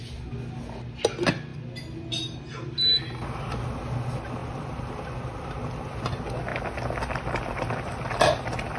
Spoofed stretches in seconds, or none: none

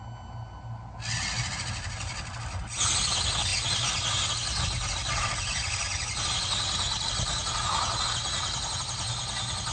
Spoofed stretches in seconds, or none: none

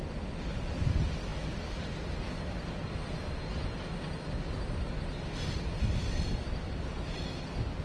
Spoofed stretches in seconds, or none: none

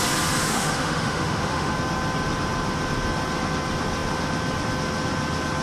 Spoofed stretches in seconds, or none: 0.4-1.7 (autoencoder, DAC-VAE)

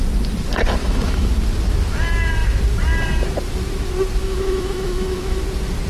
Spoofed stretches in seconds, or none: 0.8-1.3 (autoencoder, DAC-VAE); 4.2-5.4